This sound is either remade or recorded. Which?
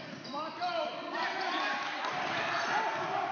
remade